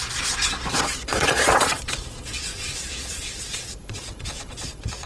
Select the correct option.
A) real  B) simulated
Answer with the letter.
B